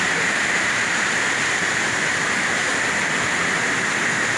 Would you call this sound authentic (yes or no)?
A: no